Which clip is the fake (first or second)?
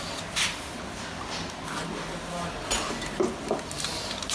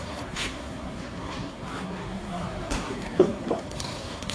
second